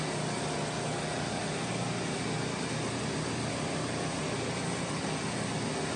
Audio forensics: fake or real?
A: real